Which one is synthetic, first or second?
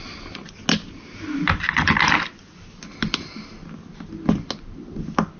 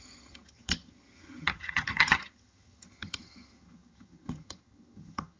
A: second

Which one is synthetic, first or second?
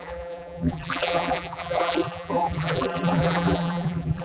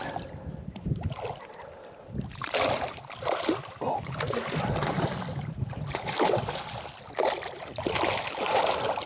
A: first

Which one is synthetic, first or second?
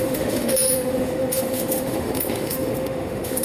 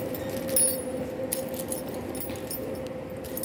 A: first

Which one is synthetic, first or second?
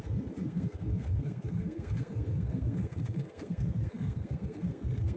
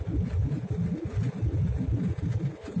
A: first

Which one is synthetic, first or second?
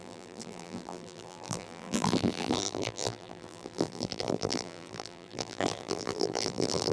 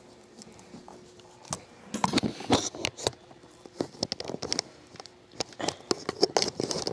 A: first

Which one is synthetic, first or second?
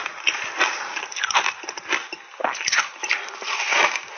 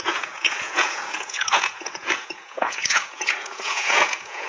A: second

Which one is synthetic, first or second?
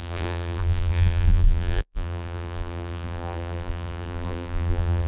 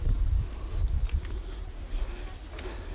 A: first